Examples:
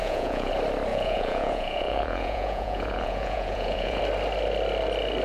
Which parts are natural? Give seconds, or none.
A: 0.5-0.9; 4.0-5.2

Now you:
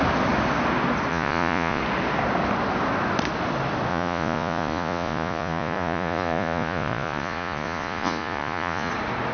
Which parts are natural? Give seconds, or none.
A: 0.0-1.1; 1.8-3.9; 8.9-9.3

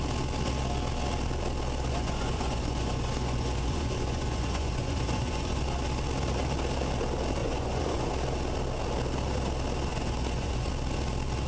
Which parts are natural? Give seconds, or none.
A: 0.0-1.9; 5.6-7.4; 8.1-9.9; 10.7-11.5